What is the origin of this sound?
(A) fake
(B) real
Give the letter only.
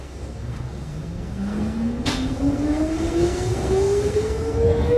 A